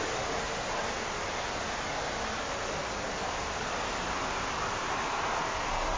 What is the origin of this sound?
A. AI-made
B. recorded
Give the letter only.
B